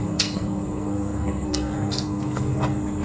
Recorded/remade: remade